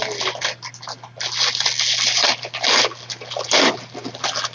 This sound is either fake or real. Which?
real